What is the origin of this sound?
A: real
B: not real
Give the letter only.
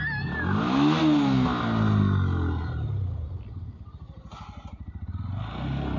A